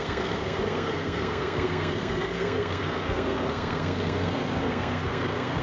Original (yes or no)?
no